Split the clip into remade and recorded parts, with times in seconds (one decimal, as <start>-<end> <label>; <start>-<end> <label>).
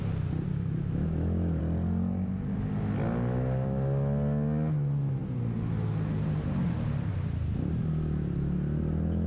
0.0-0.5 recorded; 0.5-1.6 remade; 1.6-9.3 recorded